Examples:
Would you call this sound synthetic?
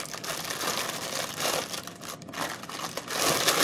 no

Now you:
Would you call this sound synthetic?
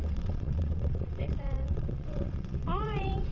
yes